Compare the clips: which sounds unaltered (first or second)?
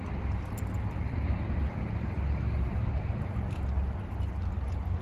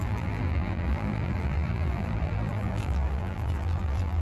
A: first